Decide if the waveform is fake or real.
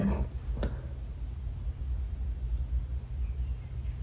real